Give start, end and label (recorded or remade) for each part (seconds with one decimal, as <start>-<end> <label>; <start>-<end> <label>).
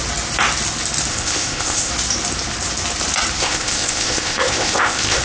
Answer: 0.0-1.1 recorded; 1.1-1.9 remade; 1.9-3.4 recorded; 3.4-5.2 remade